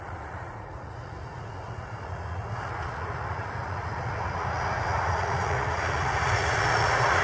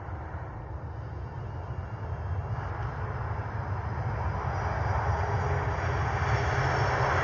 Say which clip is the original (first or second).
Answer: second